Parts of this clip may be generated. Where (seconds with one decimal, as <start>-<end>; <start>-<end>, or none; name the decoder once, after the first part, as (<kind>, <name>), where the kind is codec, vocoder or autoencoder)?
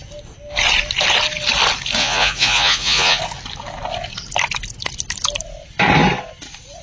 2.0-3.2 (vocoder, Vocos)